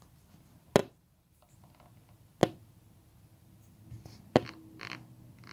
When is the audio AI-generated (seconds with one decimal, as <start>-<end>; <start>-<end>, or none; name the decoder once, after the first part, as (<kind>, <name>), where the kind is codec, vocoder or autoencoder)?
0.8-1.5 (vocoder, BigVGAN v2)